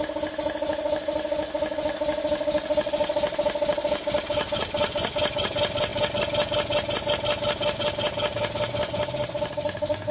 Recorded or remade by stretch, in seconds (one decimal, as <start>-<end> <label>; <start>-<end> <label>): 0.0-10.1 recorded